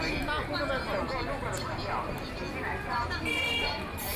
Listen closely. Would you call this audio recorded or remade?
recorded